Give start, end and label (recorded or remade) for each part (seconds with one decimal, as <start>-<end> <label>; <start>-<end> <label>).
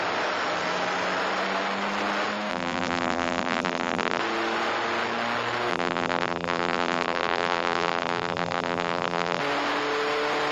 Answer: 0.0-2.5 recorded; 2.5-4.2 remade; 4.2-5.7 recorded; 5.7-9.4 remade; 9.4-10.5 recorded